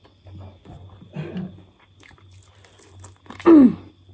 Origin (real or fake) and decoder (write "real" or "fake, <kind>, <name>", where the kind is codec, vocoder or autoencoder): real